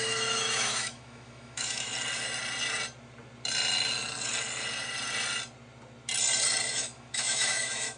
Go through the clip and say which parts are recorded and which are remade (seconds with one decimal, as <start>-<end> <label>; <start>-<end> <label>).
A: 0.0-1.9 remade; 1.9-6.7 recorded; 6.7-8.0 remade